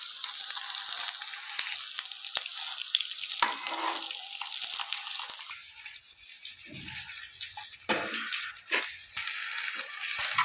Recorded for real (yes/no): yes